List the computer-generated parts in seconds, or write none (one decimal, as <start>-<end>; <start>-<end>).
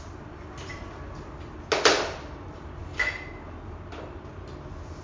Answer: none